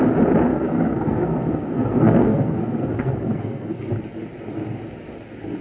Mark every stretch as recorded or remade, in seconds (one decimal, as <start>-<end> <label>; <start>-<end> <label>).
0.0-0.5 recorded; 0.5-3.9 remade; 3.9-5.6 recorded